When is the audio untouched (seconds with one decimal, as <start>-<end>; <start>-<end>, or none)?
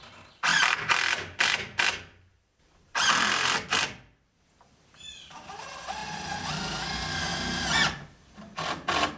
0.0-0.5; 5.4-6.0; 6.8-9.2